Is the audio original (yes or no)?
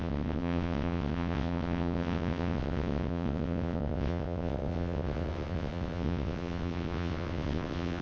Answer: no